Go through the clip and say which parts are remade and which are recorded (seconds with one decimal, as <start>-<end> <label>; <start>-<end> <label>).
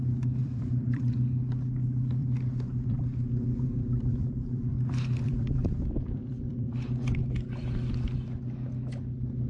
0.0-0.4 recorded; 0.4-1.1 remade; 1.1-2.2 recorded; 2.2-7.2 remade; 7.2-9.5 recorded